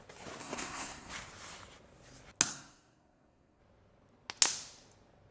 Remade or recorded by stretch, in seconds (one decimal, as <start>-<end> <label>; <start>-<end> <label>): 0.0-0.4 recorded; 0.4-1.1 remade; 1.1-2.5 recorded; 2.5-3.6 remade; 3.6-5.3 recorded